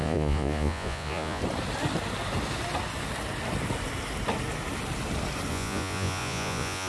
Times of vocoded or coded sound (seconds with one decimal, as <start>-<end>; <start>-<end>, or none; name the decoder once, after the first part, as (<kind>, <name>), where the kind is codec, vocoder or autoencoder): 0.0-1.4 (vocoder, Vocos); 5.5-6.9